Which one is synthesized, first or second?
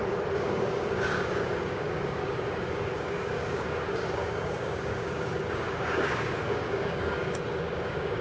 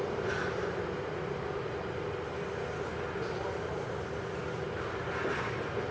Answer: first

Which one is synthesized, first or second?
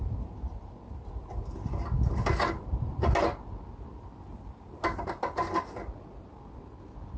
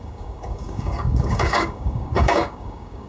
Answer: second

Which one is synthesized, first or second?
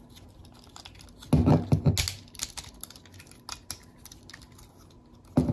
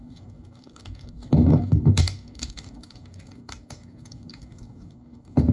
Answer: second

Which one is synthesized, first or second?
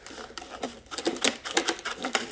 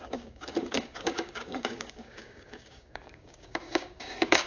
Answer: second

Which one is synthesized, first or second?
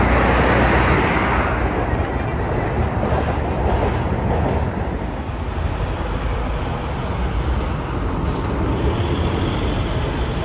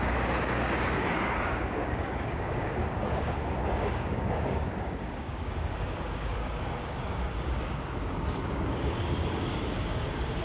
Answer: second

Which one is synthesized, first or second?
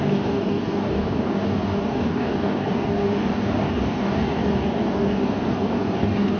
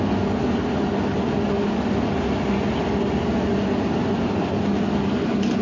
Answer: first